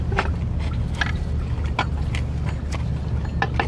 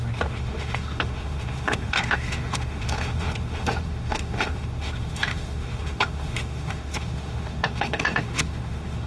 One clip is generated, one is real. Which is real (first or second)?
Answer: first